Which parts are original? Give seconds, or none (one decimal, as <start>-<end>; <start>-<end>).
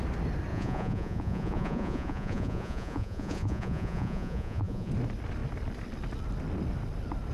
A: 0.0-0.5; 4.9-7.3